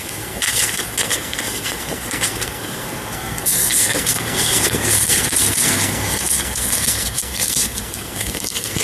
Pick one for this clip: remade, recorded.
remade